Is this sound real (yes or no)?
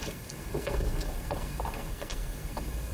no